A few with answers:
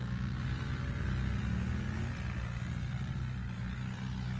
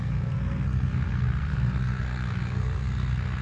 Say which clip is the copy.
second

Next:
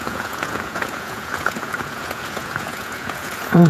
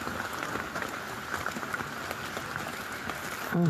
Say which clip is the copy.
first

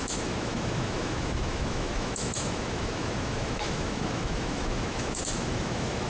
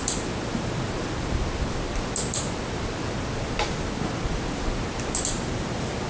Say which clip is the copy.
first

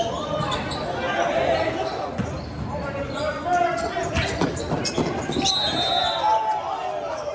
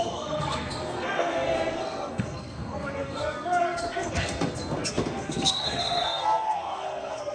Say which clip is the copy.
second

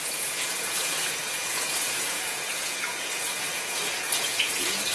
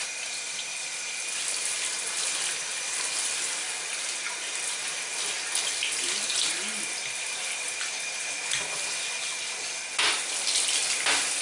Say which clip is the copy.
first